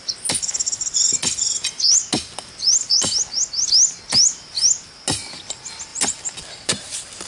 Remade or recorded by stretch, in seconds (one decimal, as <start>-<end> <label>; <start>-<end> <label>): 0.0-5.9 recorded; 5.9-7.3 remade